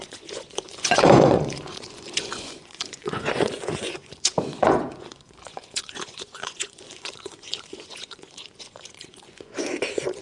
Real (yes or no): no